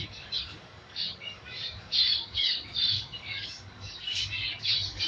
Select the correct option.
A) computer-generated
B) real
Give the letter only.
A